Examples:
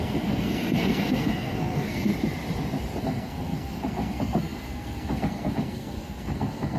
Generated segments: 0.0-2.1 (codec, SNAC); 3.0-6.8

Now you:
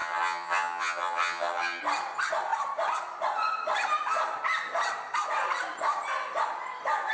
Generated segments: 0.0-1.8 (vocoder, HiFi-GAN)

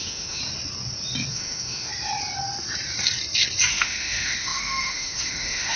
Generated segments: 0.0-0.4 (autoencoder, DAC-VAE); 1.3-1.9; 3.7-5.8